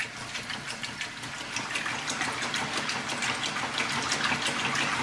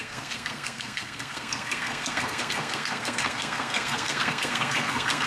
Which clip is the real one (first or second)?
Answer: first